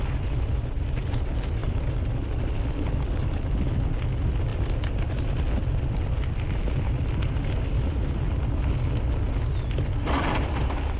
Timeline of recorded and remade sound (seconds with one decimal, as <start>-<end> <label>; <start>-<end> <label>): 0.0-11.0 recorded